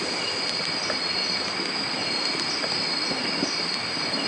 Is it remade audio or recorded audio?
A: recorded